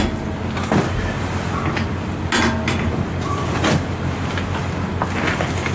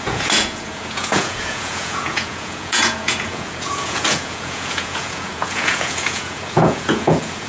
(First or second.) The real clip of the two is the first